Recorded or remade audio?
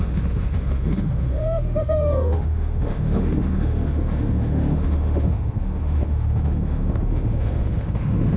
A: remade